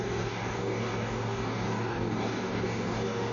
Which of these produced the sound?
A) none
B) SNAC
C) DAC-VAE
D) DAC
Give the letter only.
D